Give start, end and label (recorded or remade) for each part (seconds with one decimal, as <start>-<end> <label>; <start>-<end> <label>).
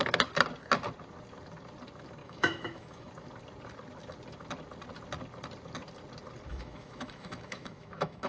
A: 0.0-2.2 recorded; 2.2-3.1 remade; 3.1-6.5 recorded; 6.5-8.3 remade